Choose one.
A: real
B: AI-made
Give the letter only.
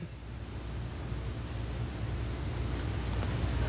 A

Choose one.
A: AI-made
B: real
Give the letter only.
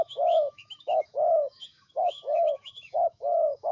A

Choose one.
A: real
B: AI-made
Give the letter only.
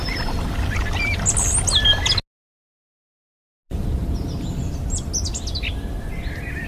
A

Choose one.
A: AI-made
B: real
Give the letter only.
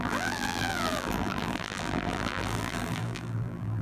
A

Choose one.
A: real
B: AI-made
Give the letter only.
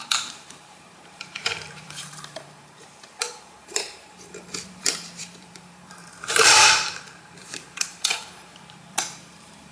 B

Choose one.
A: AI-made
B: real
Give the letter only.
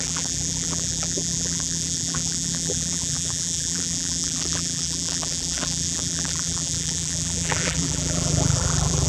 A